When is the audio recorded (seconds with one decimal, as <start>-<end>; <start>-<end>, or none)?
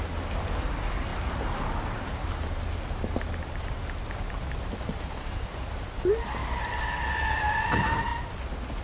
0.0-8.8